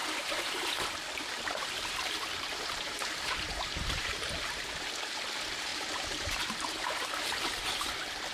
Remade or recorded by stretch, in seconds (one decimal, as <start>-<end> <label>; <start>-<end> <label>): 0.0-0.9 remade; 0.9-1.3 recorded; 1.3-4.9 remade; 4.9-5.7 recorded; 5.7-7.6 remade; 7.6-8.3 recorded